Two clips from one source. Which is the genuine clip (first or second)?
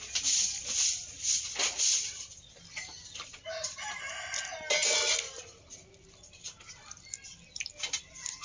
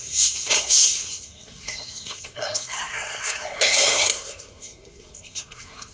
first